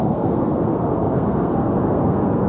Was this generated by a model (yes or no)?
yes